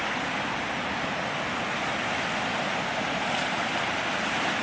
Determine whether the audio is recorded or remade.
recorded